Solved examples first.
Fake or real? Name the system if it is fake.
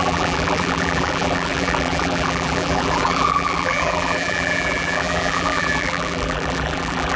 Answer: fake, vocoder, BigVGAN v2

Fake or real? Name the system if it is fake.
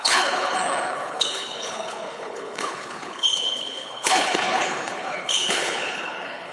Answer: fake, codec, HILCodec